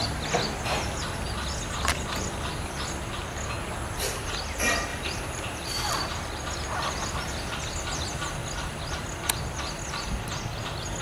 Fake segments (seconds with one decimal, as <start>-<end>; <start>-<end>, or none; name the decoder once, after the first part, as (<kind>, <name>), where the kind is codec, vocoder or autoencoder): 4.9-6.1 (vocoder, BigVGAN v2)